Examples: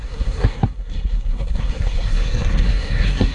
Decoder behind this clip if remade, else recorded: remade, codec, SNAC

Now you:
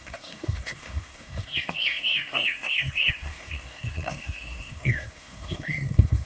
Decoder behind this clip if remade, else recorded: remade, codec, SNAC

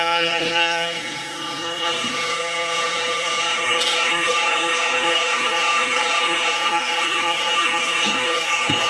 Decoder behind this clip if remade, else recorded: remade, codec, SNAC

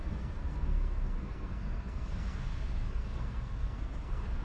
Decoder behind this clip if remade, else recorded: remade, codec, SNAC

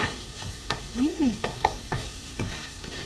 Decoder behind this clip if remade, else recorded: remade, codec, SNAC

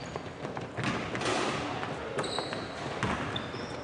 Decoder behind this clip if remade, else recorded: recorded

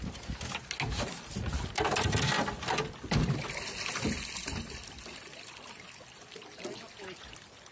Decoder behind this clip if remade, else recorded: recorded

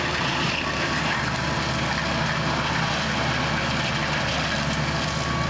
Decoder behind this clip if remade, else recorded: recorded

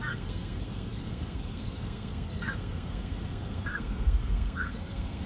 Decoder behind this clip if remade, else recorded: remade, codec, SNAC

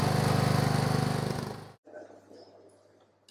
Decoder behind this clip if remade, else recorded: recorded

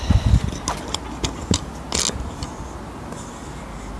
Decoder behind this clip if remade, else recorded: recorded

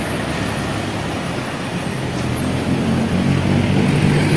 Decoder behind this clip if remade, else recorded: recorded